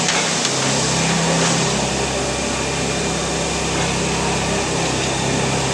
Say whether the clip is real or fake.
real